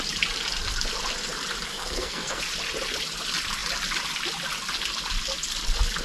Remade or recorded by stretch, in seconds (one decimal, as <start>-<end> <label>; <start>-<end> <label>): 0.0-1.7 recorded; 1.7-2.4 remade; 2.4-6.0 recorded